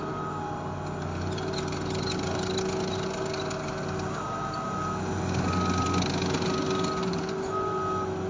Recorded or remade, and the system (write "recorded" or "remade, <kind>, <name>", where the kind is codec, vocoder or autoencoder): recorded